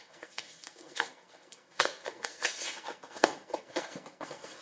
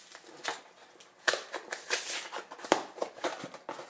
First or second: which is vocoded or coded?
first